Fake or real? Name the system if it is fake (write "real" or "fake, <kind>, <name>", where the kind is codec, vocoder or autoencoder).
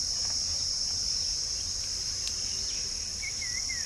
real